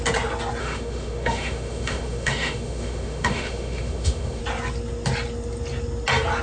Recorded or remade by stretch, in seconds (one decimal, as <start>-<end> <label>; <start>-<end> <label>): 0.0-0.6 recorded; 0.6-4.4 remade; 4.4-6.4 recorded